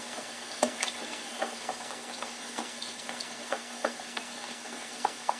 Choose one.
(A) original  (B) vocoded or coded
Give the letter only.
B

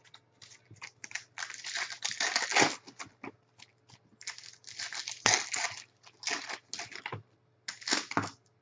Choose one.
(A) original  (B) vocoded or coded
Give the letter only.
A